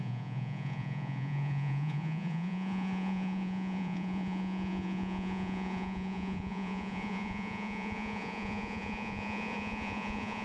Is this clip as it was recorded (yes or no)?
no